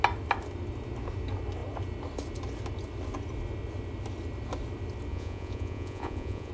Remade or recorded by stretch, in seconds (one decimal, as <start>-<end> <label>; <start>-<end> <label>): 0.0-5.1 recorded; 5.1-6.5 remade